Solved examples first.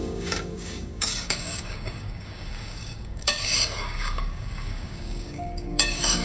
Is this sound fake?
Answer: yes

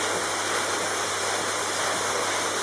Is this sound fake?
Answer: no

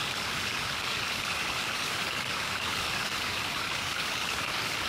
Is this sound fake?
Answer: yes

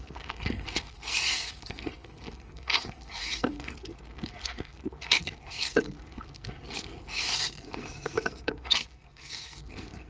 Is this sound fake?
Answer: yes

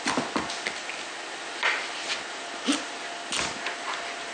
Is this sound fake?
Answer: no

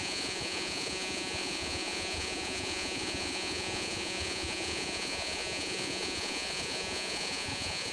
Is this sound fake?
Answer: yes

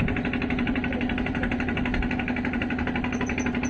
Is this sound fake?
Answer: no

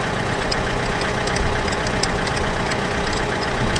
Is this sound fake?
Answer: yes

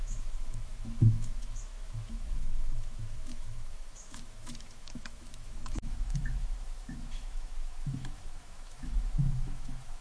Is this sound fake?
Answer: yes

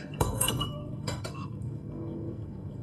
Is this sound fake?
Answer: yes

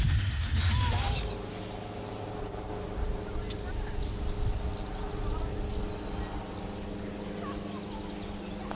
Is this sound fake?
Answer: no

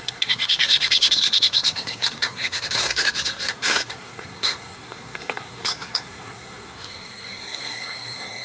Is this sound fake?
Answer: yes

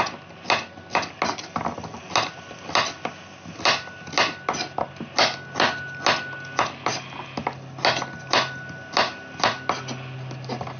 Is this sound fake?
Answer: no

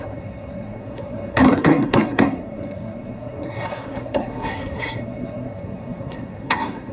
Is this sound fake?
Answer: yes